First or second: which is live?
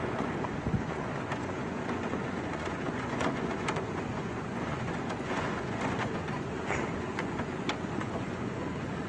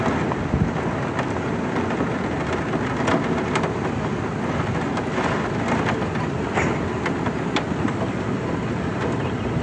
second